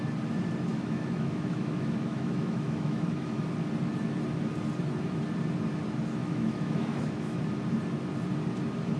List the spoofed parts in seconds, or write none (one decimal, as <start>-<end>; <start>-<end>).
0.7-3.4; 6.2-7.4